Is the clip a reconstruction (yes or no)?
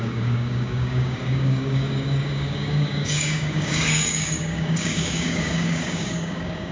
yes